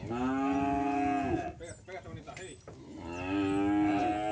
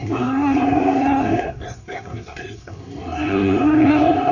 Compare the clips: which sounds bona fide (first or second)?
first